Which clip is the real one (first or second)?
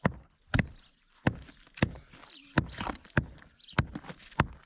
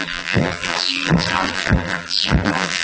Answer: first